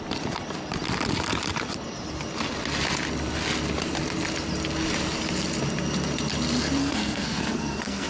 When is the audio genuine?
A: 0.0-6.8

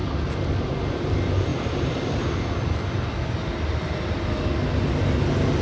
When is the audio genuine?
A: 0.0-5.6

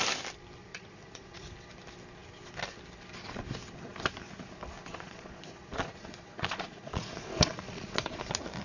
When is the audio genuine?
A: 0.0-0.7; 1.4-4.9; 8.2-8.6

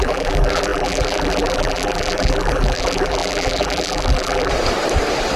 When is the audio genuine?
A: 4.5-5.4

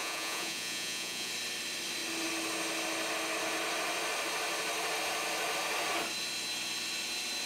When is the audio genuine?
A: 1.3-7.5

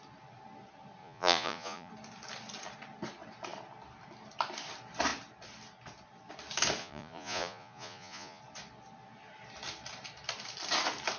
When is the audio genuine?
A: 0.0-1.0; 1.9-6.8; 8.4-11.2

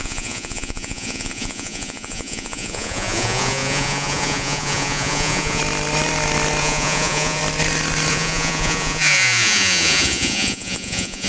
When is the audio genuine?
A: 5.6-6.6; 7.4-8.1

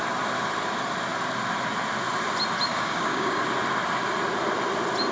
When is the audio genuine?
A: 0.0-2.7; 3.4-5.1